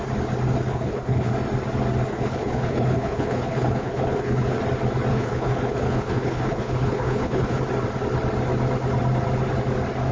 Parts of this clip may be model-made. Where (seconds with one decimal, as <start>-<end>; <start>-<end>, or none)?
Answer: 0.7-1.3; 2.1-4.6; 5.1-7.6